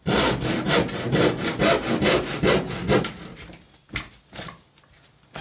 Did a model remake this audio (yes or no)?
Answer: no